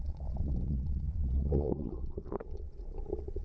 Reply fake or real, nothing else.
fake